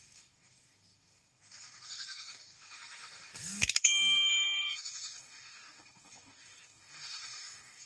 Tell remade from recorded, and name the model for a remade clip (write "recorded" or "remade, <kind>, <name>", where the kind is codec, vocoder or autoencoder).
remade, codec, DAC